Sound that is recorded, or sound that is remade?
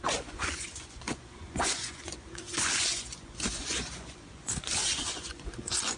remade